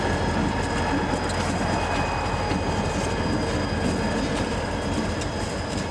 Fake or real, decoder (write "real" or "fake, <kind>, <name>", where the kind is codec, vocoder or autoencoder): real